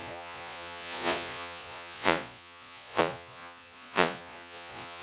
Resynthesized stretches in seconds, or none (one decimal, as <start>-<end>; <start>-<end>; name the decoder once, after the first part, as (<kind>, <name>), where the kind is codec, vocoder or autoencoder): 0.0-5.0 (vocoder, Vocos)